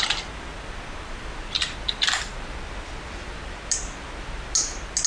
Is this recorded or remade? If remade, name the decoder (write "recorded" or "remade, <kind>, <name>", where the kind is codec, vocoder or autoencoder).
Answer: recorded